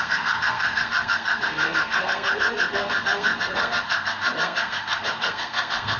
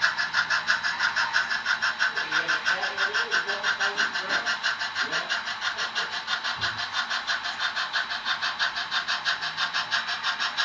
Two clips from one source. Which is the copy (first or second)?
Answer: first